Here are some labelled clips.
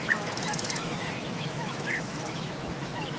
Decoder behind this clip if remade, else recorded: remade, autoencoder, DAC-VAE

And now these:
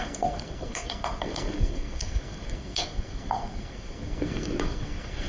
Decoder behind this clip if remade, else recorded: remade, codec, SNAC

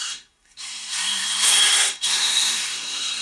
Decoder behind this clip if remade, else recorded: remade, codec, SNAC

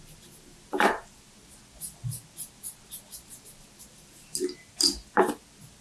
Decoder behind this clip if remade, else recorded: recorded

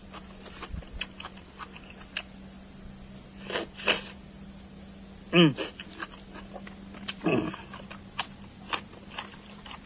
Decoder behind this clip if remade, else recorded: recorded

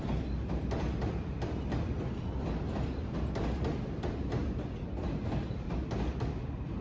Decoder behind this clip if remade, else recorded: recorded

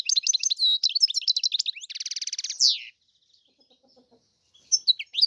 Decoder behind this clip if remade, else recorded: recorded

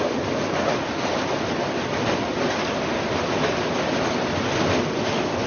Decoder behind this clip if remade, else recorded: recorded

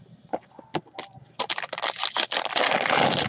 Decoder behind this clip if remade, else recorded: recorded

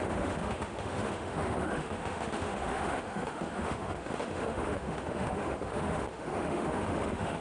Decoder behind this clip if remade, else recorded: remade, autoencoder, DAC-VAE